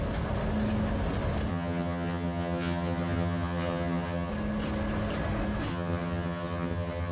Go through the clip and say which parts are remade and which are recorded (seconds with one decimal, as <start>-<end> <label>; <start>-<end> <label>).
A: 0.0-1.5 recorded; 1.5-4.3 remade; 4.3-5.7 recorded; 5.7-7.1 remade